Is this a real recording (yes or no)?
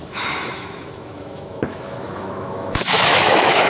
no